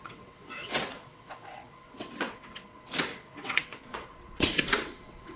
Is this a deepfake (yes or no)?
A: yes